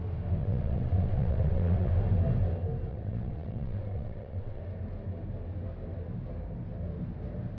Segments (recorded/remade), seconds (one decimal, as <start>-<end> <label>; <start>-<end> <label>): 0.0-0.4 recorded; 0.4-1.9 remade; 1.9-2.9 recorded; 2.9-4.6 remade; 4.6-7.6 recorded

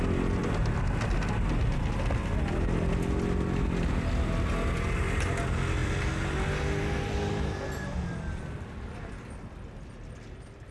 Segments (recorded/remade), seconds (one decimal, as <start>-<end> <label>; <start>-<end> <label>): 0.0-10.7 recorded